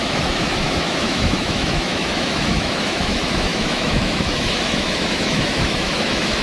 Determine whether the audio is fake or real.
fake